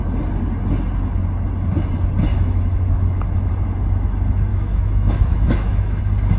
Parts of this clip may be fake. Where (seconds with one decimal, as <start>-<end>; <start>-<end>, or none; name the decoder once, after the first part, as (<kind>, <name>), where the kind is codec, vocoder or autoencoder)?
2.3-3.5 (autoencoder, DAC-VAE); 4.5-6.0